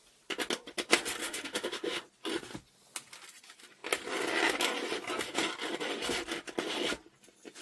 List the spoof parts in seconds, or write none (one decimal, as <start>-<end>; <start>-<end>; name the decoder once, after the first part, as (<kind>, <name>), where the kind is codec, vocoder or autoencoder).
1.2-2.0 (autoencoder, DAC-VAE)